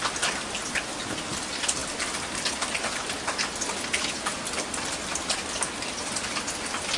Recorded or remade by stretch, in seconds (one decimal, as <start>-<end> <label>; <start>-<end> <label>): 0.0-7.0 recorded